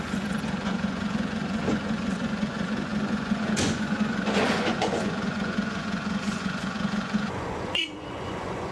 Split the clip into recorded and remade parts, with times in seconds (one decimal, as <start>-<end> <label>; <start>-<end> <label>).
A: 0.0-8.7 remade